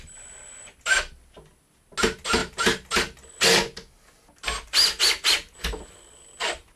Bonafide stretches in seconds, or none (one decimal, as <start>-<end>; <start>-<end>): 0.0-6.8